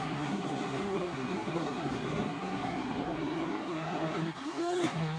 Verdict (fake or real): fake